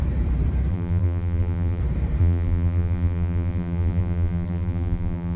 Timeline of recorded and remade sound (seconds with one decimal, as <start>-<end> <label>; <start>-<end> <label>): 0.0-0.7 recorded; 0.7-1.8 remade; 1.8-2.2 recorded; 2.2-5.4 remade

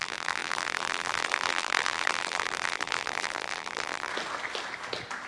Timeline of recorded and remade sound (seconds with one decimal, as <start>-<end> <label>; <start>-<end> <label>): 0.0-4.1 remade; 4.1-5.3 recorded

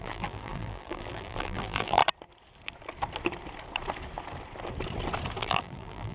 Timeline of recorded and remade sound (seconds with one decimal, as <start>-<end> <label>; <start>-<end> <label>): 0.0-2.0 remade; 2.0-5.4 recorded; 5.4-6.1 remade

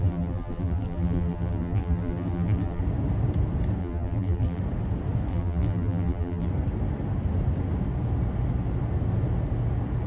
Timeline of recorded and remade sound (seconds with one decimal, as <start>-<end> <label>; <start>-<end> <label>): 0.0-2.8 remade; 2.8-3.8 recorded; 3.8-4.6 remade; 4.6-5.3 recorded; 5.3-6.5 remade; 6.5-10.1 recorded

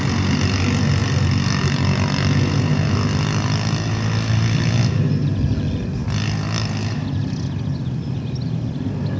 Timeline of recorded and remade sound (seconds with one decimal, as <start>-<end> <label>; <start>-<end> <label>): 0.0-9.2 recorded

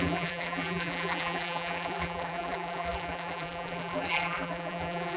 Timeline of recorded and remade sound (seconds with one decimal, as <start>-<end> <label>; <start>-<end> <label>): 0.0-5.2 remade

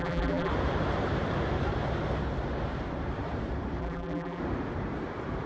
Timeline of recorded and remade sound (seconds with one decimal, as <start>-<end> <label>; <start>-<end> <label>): 0.0-0.5 remade; 0.5-3.8 recorded; 3.8-4.4 remade; 4.4-5.5 recorded

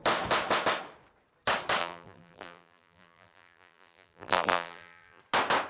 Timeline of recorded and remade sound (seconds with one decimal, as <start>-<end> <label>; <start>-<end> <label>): 0.0-1.8 recorded; 1.8-5.2 remade; 5.2-5.7 recorded